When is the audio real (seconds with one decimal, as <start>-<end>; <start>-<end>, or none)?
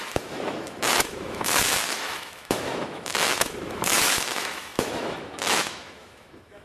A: none